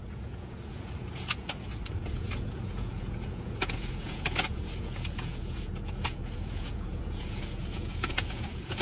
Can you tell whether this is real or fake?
fake